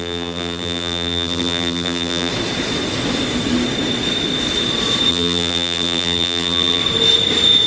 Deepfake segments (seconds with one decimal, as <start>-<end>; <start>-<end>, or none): 0.0-2.3; 5.1-6.8